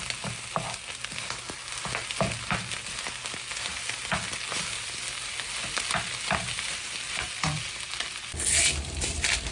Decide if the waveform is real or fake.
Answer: real